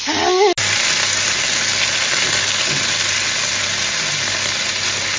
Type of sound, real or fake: real